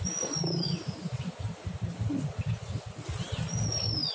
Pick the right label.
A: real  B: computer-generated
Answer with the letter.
A